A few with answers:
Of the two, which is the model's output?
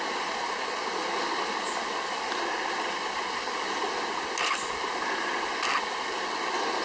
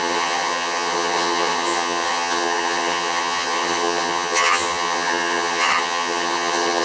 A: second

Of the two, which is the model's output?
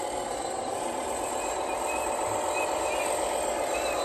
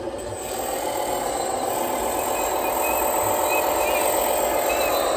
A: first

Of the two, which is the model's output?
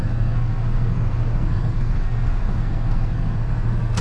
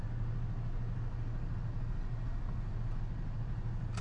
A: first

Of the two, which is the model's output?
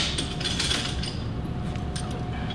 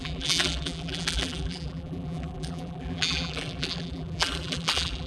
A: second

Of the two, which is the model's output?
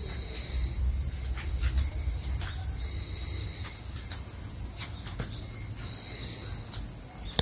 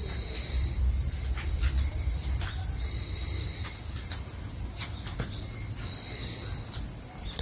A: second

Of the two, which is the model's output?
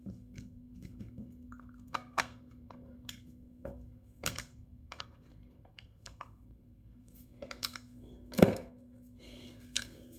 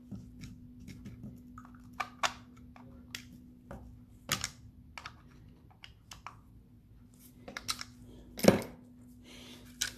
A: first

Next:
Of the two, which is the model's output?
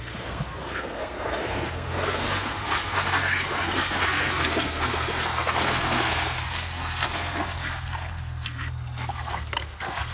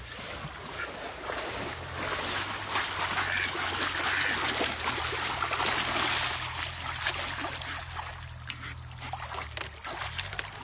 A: first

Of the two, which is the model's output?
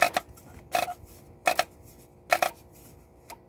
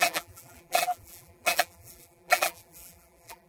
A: second